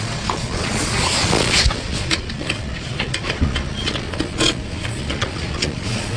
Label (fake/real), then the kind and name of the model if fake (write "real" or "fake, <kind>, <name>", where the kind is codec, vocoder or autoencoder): fake, vocoder, Vocos